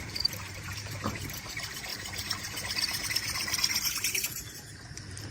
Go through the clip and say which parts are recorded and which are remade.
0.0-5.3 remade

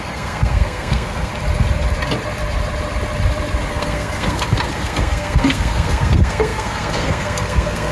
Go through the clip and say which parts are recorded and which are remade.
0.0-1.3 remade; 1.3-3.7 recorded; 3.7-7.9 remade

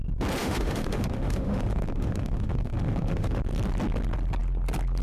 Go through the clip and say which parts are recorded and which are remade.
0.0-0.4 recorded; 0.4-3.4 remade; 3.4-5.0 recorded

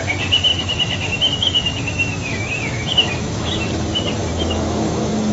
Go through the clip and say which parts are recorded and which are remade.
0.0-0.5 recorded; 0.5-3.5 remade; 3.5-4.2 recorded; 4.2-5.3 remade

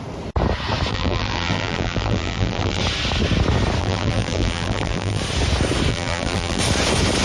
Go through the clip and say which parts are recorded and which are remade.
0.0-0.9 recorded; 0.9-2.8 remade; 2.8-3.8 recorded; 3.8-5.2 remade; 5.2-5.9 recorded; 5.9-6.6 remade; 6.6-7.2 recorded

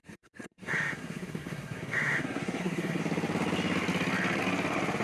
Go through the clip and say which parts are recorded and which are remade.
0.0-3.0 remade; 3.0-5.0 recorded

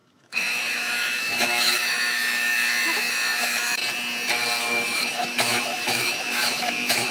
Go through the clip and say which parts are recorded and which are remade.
0.0-3.8 remade; 3.8-4.6 recorded; 4.6-7.1 remade

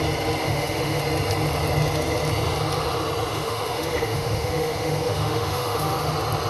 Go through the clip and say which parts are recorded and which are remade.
0.0-0.4 recorded; 0.4-1.0 remade; 1.0-3.3 recorded; 3.3-6.1 remade; 6.1-6.5 recorded